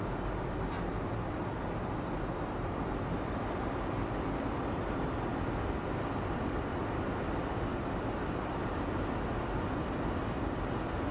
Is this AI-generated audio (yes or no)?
no